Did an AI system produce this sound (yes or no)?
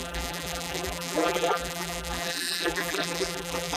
yes